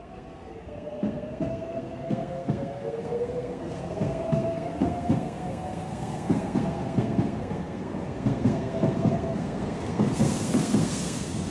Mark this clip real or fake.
fake